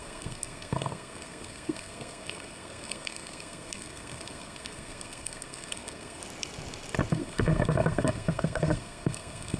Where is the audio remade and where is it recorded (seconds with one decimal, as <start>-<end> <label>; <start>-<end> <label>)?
0.0-6.2 remade; 6.2-7.1 recorded; 7.1-9.6 remade